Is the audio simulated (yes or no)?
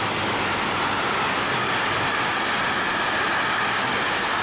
no